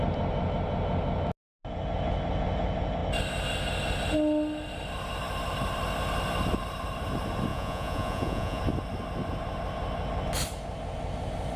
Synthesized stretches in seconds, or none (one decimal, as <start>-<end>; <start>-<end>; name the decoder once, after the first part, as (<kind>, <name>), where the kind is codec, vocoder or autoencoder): 7.5-8.6 (vocoder, Vocos)